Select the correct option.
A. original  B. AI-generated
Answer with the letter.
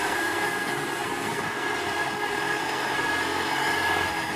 B